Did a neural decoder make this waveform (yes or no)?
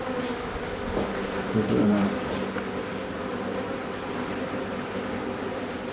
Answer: no